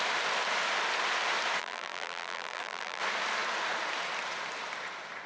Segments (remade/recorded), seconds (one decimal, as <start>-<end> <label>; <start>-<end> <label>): 0.0-1.6 recorded; 1.6-3.0 remade; 3.0-5.3 recorded